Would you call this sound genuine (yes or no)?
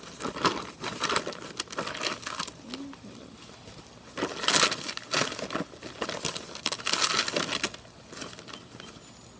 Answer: yes